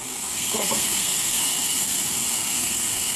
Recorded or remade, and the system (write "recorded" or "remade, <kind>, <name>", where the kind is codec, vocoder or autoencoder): remade, codec, SNAC